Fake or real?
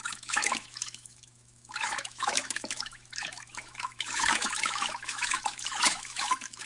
fake